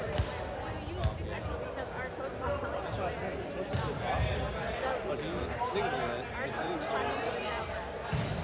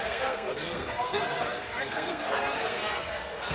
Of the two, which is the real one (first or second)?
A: first